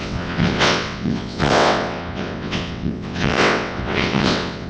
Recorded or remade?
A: remade